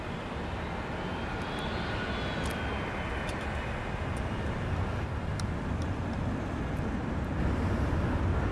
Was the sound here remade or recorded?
recorded